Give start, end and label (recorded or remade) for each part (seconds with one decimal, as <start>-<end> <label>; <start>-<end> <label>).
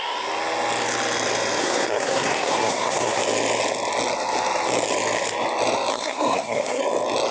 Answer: 0.0-1.6 recorded; 1.6-3.2 remade; 3.2-5.9 recorded; 5.9-6.8 remade; 6.8-7.3 recorded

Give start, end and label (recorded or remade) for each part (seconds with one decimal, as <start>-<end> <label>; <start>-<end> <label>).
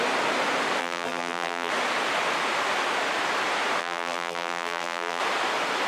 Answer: 0.0-0.8 recorded; 0.8-1.7 remade; 1.7-3.8 recorded; 3.8-5.2 remade; 5.2-5.9 recorded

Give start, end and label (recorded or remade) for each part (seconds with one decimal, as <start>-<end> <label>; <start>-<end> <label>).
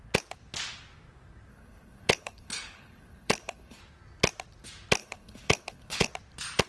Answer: 0.0-1.5 recorded; 1.5-3.8 remade; 3.8-5.0 recorded; 5.0-6.1 remade; 6.1-6.7 recorded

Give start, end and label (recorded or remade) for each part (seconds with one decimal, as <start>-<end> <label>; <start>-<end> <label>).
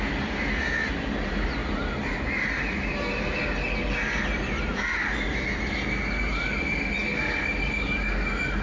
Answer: 0.0-8.6 recorded